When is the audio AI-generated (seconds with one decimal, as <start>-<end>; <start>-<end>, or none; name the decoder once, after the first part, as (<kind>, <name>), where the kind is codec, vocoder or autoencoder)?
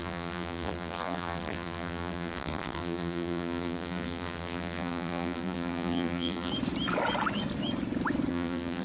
0.0-6.5 (vocoder, BigVGAN v2); 8.3-8.8